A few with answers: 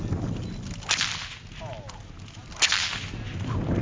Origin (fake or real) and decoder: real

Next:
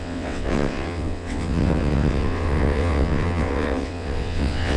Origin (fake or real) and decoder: fake, vocoder, WaveNeXt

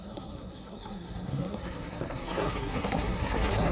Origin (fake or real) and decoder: fake, codec, SNAC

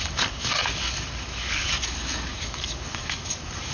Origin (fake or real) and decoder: fake, codec, DAC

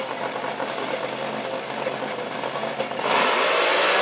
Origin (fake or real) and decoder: real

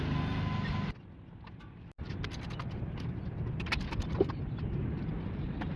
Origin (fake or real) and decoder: real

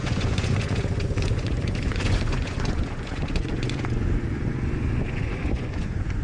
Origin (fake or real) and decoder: fake, vocoder, Vocos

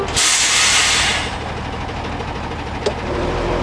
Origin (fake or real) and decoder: real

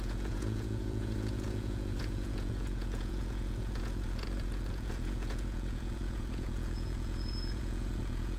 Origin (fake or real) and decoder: fake, vocoder, Vocos